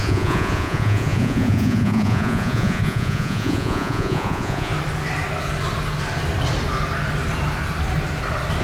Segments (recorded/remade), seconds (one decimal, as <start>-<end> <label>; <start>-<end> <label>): 0.0-4.7 remade; 4.7-8.6 recorded